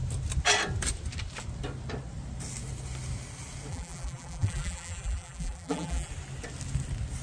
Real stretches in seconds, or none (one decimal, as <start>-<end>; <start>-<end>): 0.0-3.7; 6.1-7.2